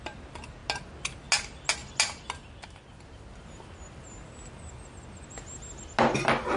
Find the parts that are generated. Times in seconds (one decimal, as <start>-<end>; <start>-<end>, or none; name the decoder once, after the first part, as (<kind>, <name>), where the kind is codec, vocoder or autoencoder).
none